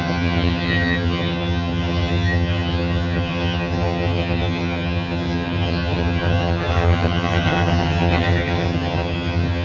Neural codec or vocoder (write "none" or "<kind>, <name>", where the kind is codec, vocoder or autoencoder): vocoder, HiFi-GAN